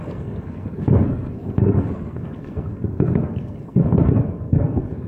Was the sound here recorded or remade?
remade